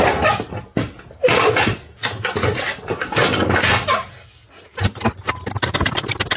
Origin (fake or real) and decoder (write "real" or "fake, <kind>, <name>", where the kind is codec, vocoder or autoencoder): real